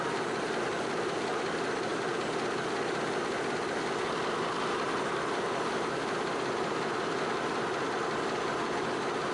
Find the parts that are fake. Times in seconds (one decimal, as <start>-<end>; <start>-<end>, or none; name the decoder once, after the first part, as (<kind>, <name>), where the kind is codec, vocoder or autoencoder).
none